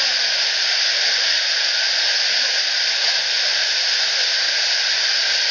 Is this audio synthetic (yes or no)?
no